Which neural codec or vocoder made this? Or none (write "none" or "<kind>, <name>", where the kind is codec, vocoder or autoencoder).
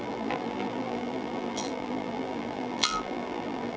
vocoder, BigVGAN v2